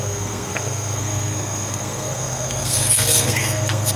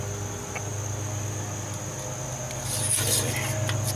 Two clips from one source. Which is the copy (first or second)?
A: first